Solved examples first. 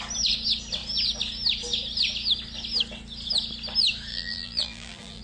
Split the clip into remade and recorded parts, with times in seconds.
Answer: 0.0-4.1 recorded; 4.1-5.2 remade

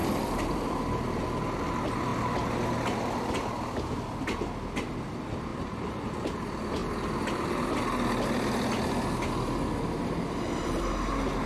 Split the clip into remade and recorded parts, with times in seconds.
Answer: 0.0-0.8 remade; 0.8-5.5 recorded; 5.5-6.0 remade; 6.0-11.5 recorded

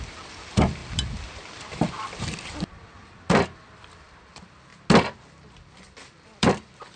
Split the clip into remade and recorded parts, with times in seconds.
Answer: 0.0-4.7 remade; 4.7-5.5 recorded; 5.5-7.0 remade

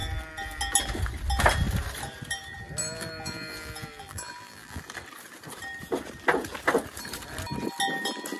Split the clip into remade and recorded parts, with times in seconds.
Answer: 0.0-2.8 recorded; 2.8-4.8 remade; 4.8-8.4 recorded

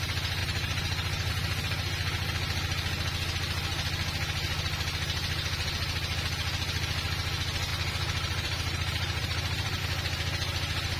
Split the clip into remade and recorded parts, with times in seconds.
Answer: 0.0-0.4 recorded; 0.4-1.3 remade; 1.3-7.7 recorded; 7.7-9.8 remade; 9.8-11.0 recorded

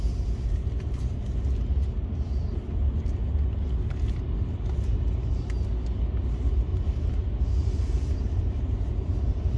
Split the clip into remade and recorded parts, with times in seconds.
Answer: 0.0-6.7 recorded; 6.7-8.4 remade; 8.4-9.6 recorded

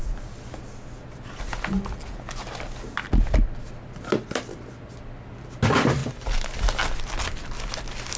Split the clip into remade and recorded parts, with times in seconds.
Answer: 0.0-6.0 recorded; 6.0-6.5 remade; 6.5-8.2 recorded